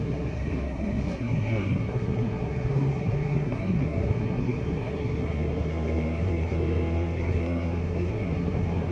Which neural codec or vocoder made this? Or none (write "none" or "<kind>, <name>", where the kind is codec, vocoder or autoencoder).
codec, SNAC